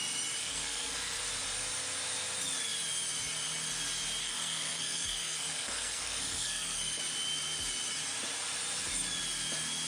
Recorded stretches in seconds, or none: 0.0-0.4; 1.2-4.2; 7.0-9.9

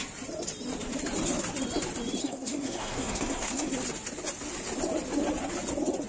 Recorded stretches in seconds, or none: 0.0-2.2; 3.7-6.1

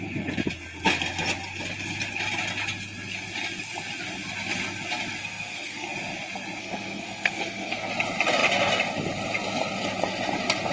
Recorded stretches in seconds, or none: 0.0-5.2; 5.9-6.6; 7.9-10.7